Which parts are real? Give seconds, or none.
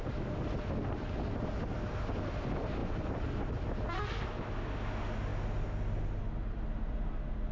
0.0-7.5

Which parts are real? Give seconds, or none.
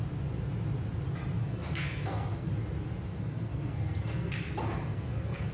0.0-1.4; 2.5-3.1